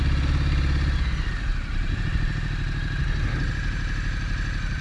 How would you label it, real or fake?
real